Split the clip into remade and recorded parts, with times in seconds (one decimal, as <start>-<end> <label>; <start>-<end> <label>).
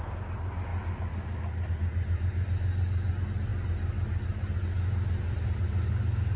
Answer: 0.0-6.4 recorded